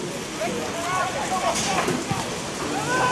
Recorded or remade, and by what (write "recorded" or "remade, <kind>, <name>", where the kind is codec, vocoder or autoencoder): recorded